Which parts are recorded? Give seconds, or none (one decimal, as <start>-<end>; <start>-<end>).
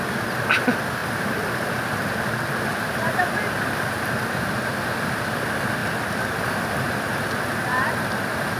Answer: 0.0-1.0; 4.4-5.8; 6.6-8.6